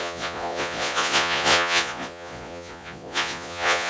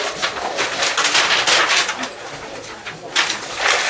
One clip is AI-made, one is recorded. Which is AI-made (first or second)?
first